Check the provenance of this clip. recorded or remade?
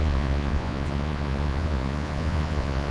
remade